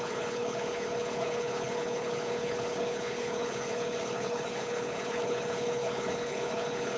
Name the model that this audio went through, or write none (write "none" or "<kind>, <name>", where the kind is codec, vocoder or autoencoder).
codec, HILCodec